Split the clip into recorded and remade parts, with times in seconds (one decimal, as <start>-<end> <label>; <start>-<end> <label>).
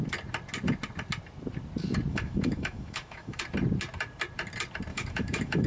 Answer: 0.0-2.1 recorded; 2.1-3.4 remade; 3.4-4.9 recorded; 4.9-5.7 remade